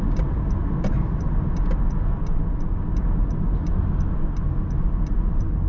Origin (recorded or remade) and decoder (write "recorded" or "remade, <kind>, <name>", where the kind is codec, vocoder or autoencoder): recorded